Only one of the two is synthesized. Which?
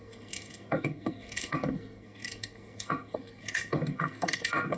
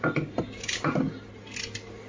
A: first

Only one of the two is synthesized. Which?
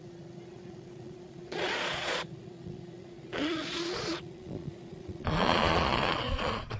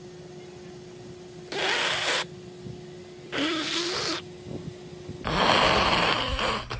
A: first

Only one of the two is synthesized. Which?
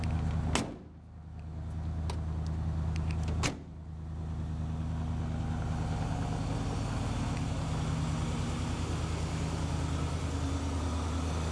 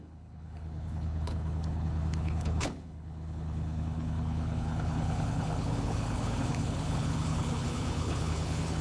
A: second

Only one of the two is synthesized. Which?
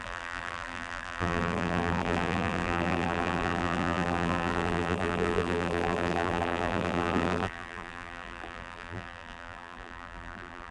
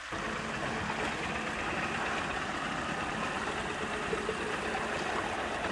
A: first